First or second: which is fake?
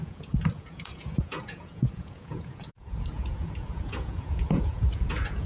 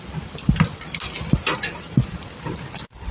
first